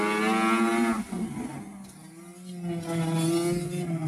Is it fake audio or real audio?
real